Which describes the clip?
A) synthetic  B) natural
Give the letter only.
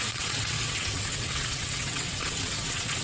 A